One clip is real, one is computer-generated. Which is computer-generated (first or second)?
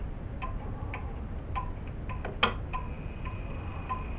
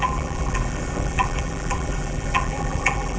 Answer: second